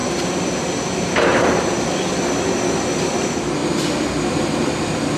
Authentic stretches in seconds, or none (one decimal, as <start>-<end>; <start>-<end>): 0.0-5.2